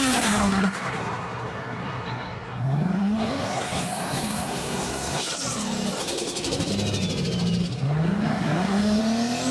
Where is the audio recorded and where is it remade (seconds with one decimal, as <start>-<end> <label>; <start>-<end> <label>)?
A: 0.0-5.3 remade; 5.3-6.0 recorded; 6.0-6.7 remade; 6.7-7.6 recorded; 7.6-9.0 remade; 9.0-9.5 recorded